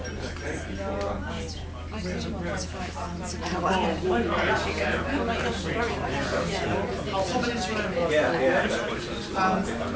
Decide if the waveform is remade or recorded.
recorded